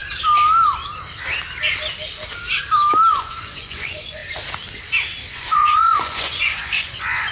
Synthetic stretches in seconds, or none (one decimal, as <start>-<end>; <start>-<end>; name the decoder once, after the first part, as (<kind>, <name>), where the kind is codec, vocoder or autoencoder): 3.1-4.2 (vocoder, Vocos); 5.3-7.3